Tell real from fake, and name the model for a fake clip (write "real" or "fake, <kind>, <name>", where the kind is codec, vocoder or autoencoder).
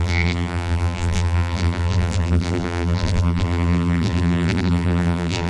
fake, vocoder, BigVGAN v2